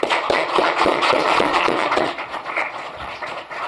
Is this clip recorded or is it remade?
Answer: remade